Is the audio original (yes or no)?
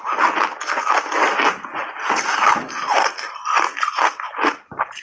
yes